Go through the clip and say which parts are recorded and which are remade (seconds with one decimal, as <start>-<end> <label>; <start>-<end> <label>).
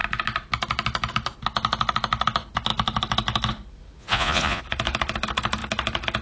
0.0-4.0 recorded; 4.0-4.6 remade; 4.6-6.2 recorded